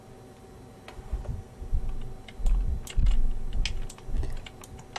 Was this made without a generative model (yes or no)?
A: yes